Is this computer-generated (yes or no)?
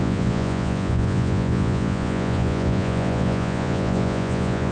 yes